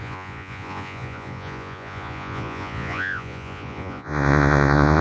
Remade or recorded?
remade